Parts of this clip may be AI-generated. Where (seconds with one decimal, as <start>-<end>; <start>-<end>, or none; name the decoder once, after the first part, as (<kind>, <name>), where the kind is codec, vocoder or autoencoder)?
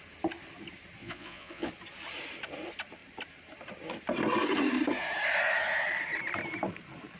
1.0-1.7 (vocoder, Vocos)